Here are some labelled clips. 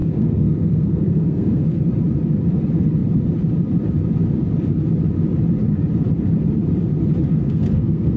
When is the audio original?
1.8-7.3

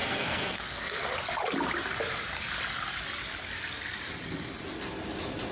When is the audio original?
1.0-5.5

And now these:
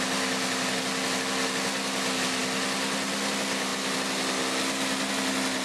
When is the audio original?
0.0-5.6

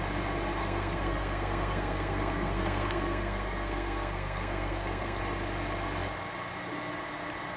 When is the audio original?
0.0-0.6; 5.2-7.6

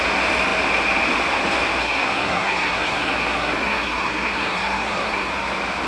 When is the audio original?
0.0-1.8; 5.3-5.9

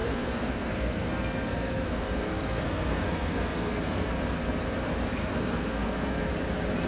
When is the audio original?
4.1-5.2; 6.3-6.9

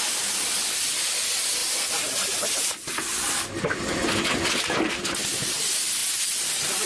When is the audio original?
0.0-6.9

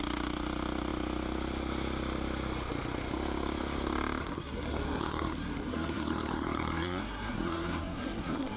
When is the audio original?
0.0-4.2